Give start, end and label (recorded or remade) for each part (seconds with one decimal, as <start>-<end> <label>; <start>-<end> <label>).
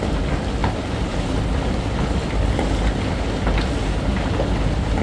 0.0-5.0 recorded